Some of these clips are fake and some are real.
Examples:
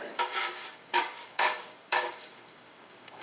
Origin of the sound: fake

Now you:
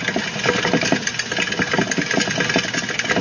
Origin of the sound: real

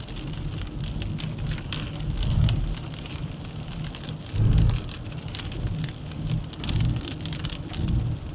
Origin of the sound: real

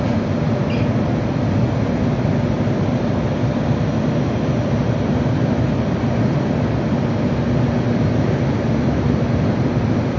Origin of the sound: real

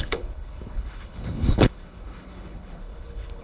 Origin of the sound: fake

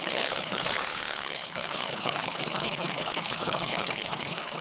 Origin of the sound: fake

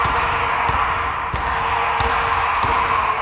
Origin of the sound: real